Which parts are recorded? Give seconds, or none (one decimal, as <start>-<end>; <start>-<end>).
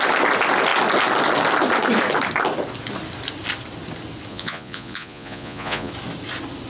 0.0-4.3; 5.9-6.7